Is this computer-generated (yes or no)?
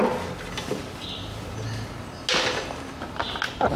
no